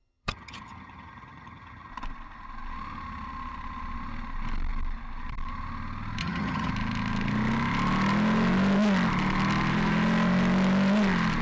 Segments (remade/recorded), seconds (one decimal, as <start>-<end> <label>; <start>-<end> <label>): 0.0-1.9 remade; 1.9-6.2 recorded; 6.2-6.7 remade; 6.7-11.4 recorded